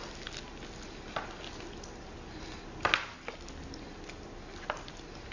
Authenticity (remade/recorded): recorded